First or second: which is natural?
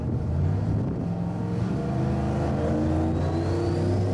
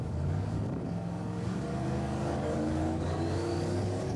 first